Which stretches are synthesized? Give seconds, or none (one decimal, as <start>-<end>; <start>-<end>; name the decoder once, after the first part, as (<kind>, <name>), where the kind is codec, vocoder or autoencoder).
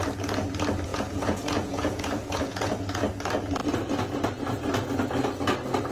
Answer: 0.9-3.0 (vocoder, Vocos)